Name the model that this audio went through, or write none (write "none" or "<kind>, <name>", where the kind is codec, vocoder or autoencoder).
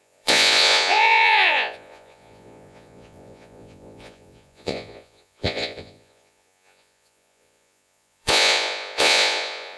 vocoder, Vocos